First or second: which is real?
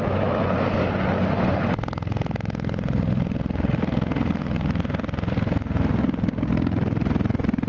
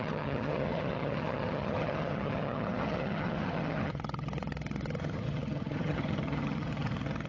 first